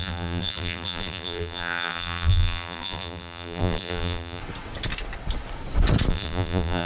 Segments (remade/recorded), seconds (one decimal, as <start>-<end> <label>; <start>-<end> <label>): 0.0-4.4 remade; 4.4-6.1 recorded; 6.1-6.9 remade